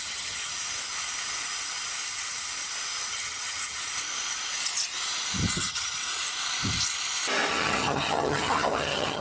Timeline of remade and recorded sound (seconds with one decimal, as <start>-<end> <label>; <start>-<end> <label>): 0.0-0.5 remade; 0.5-3.1 recorded; 3.1-3.8 remade; 3.8-5.5 recorded; 5.5-6.0 remade; 6.0-7.5 recorded; 7.5-9.2 remade